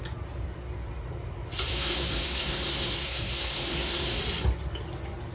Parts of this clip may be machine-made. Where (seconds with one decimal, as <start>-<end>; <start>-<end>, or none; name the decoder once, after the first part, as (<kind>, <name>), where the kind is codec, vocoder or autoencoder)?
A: 1.7-4.2 (codec, SNAC)